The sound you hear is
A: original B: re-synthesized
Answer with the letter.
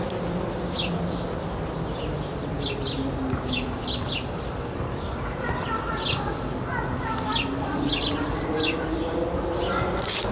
A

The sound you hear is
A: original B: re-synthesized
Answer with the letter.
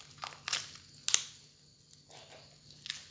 A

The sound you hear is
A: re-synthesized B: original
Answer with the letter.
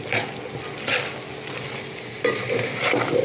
B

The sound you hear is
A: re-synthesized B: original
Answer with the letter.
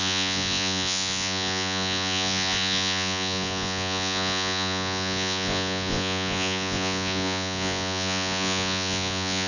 A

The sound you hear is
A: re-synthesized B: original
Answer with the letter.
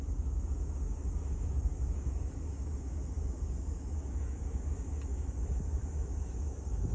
A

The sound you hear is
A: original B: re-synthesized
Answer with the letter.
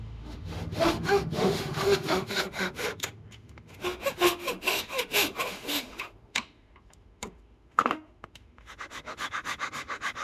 B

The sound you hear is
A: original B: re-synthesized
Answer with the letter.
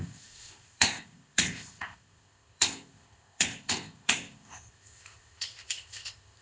B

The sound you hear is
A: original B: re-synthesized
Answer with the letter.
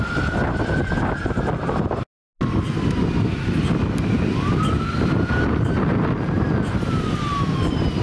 A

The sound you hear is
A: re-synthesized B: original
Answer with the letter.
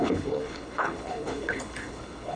A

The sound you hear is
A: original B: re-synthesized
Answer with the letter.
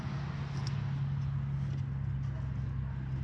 A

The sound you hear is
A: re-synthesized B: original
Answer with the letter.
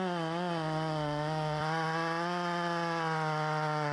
B